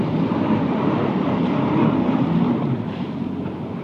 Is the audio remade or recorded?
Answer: recorded